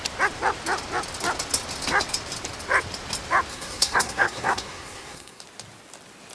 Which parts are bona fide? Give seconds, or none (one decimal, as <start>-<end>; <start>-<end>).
0.0-3.5; 5.4-6.3